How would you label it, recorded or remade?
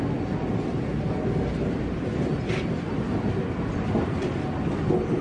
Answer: recorded